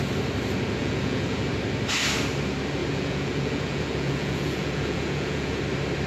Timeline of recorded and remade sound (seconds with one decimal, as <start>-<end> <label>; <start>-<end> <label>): 0.0-0.8 recorded; 0.8-1.5 remade; 1.5-2.8 recorded; 2.8-5.6 remade; 5.6-6.1 recorded